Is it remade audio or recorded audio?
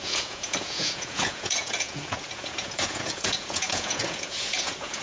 remade